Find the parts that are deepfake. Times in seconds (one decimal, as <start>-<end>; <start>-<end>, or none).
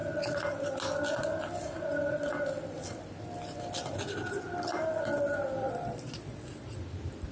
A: 5.6-6.8